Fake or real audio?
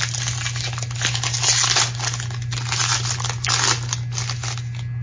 real